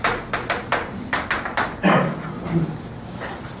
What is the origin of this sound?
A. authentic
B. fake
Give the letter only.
B